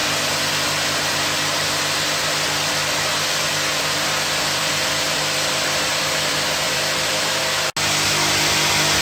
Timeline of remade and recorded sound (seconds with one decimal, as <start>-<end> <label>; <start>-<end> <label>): 0.0-3.7 recorded; 3.7-7.4 remade; 7.4-9.0 recorded